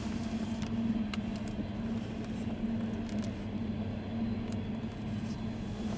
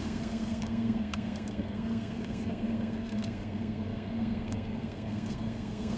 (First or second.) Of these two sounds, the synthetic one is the second